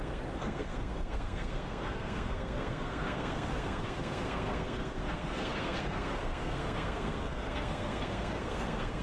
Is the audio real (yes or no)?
no